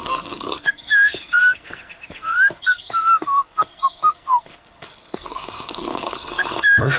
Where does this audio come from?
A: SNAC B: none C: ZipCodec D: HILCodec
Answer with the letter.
A